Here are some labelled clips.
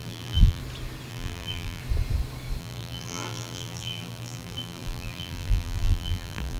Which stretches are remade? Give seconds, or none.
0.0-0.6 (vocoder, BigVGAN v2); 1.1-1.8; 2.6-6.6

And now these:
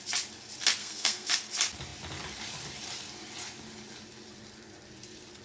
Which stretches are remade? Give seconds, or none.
0.8-1.3 (codec, SNAC)

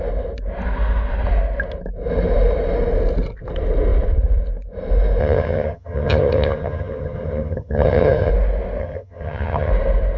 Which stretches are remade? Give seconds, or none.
5.2-8.3 (vocoder, HiFi-GAN); 8.8-9.7

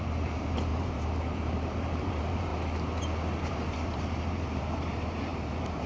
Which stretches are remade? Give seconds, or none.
0.0-2.5 (vocoder, BigVGAN v2); 3.4-5.9